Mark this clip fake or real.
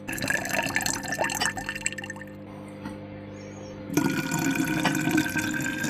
real